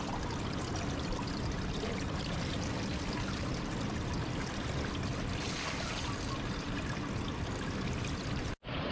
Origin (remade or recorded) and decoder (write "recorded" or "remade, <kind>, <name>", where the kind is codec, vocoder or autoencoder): recorded